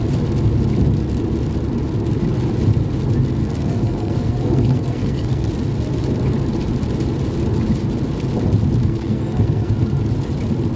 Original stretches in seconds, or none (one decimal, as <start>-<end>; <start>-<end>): 0.0-3.4; 5.5-8.8; 9.7-10.8